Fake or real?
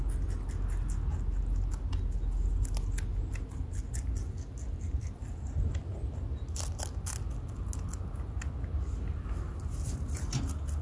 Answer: real